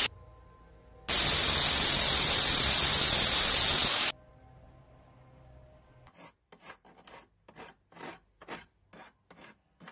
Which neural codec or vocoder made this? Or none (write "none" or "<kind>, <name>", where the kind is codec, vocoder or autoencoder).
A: none